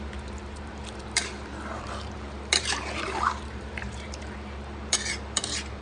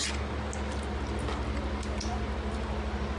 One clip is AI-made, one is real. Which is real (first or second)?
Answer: second